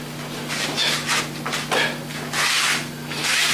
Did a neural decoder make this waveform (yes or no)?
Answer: no